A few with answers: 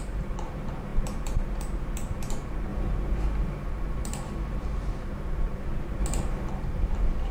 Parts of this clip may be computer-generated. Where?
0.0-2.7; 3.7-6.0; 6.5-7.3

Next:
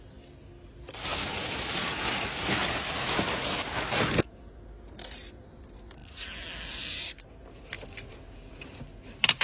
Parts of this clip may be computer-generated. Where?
none

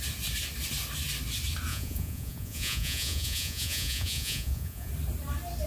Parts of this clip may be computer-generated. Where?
1.7-4.9

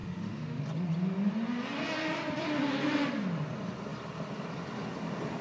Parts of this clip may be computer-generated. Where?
0.0-0.6

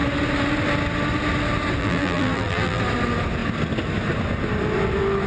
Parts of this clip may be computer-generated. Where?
1.8-2.8

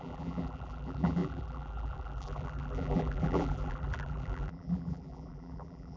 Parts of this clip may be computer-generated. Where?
0.0-6.0